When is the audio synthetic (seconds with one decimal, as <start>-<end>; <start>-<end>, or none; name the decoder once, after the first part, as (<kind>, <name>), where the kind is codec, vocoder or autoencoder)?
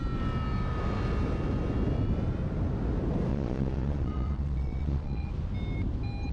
3.3-5.3 (vocoder, Vocos)